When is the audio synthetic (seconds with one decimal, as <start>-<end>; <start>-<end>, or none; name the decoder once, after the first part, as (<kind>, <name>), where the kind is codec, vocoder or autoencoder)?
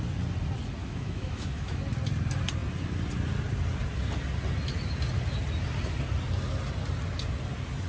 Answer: 0.8-1.8 (autoencoder, DAC-VAE)